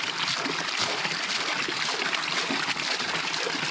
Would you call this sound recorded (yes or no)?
yes